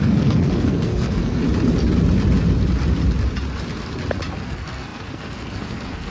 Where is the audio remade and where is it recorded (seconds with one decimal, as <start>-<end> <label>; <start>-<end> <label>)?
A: 0.0-1.4 remade; 1.4-4.4 recorded; 4.4-6.1 remade

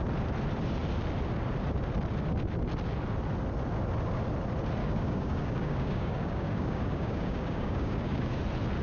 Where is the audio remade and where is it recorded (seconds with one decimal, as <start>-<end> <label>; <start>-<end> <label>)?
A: 0.0-4.8 recorded; 4.8-8.4 remade; 8.4-8.8 recorded

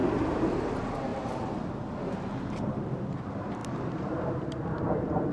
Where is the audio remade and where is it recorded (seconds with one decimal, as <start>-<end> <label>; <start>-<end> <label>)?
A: 0.0-1.1 remade; 1.1-1.9 recorded; 1.9-5.3 remade

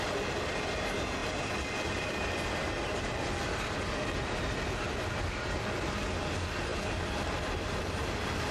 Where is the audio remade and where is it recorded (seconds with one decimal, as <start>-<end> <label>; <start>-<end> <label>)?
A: 0.0-8.5 recorded